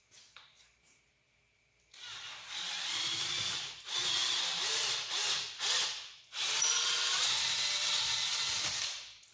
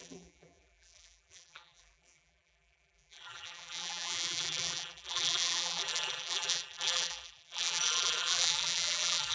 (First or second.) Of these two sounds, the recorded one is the first